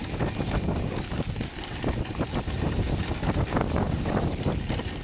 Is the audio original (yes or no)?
yes